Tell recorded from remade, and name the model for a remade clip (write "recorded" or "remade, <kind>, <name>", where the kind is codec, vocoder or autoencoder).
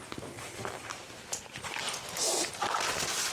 recorded